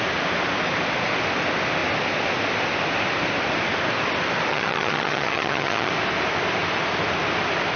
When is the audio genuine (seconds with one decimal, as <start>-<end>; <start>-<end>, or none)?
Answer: 0.0-4.5; 5.9-7.8